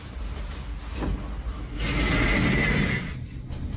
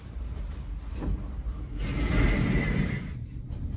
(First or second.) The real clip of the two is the first